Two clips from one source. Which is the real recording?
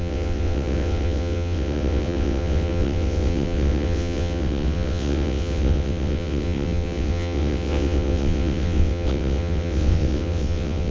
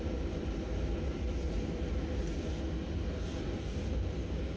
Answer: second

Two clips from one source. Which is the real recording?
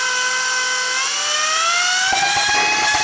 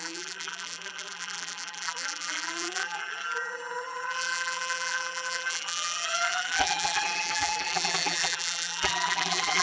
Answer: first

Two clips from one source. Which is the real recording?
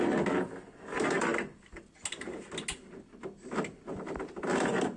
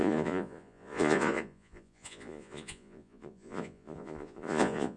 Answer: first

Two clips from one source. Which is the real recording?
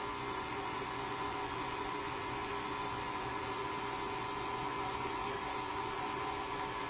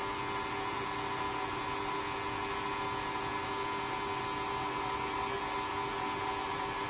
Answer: second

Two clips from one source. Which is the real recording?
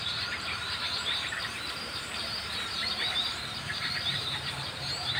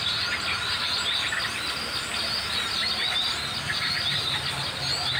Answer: second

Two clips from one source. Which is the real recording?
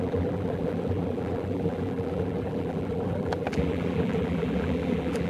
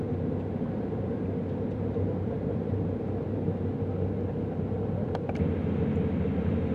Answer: second